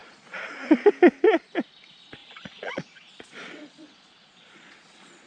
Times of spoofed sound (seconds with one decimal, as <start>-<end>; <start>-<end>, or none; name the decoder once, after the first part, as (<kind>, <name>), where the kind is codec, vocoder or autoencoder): 0.0-0.9 (vocoder, Vocos); 2.2-5.3